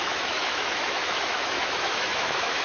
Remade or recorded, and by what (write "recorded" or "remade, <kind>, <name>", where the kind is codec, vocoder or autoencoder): remade, autoencoder, DAC-VAE